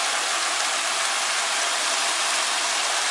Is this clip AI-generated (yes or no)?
no